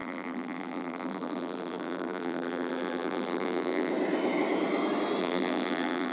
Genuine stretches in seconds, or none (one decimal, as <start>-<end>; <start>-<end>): 3.9-5.2